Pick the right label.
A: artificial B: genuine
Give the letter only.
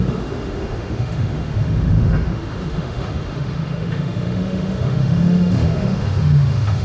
A